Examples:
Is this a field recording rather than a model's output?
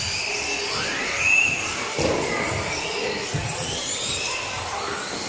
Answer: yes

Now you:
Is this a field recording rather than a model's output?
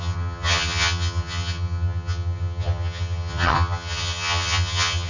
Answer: no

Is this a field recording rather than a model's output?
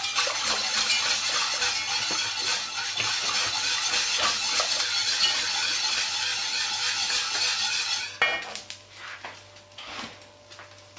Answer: yes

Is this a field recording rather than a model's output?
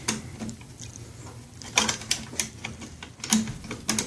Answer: yes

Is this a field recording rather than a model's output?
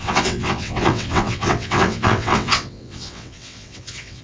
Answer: no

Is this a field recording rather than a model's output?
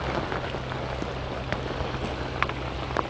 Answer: yes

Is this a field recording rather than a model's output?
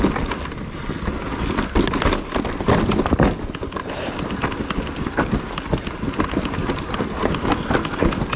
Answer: yes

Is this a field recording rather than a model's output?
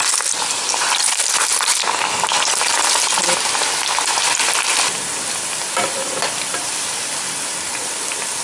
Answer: no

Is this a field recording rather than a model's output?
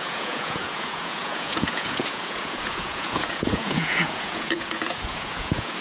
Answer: no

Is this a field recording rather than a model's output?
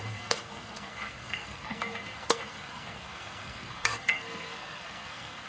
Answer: no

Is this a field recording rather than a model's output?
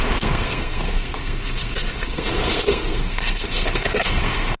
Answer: no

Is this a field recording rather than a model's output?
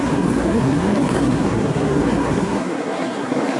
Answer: no